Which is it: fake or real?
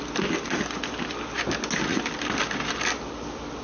real